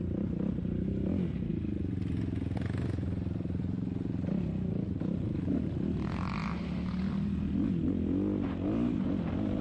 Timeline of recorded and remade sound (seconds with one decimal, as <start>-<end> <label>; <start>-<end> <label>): 0.0-9.6 recorded